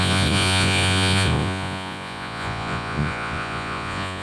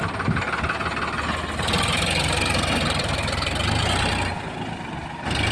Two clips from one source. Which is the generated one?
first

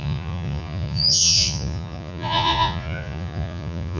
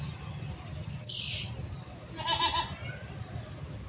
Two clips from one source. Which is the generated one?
first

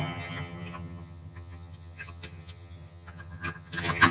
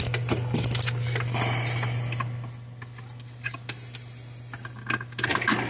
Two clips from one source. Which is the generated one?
first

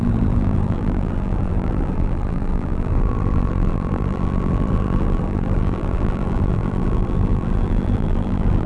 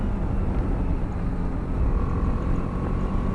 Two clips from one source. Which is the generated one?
first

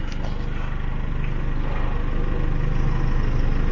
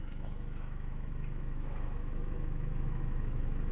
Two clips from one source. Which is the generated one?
second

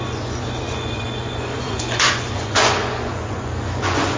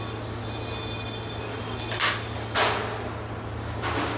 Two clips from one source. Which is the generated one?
first